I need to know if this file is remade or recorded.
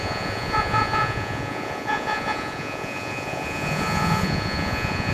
remade